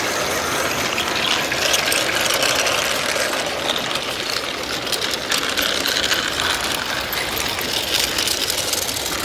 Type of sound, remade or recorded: recorded